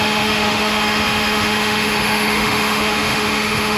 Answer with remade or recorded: remade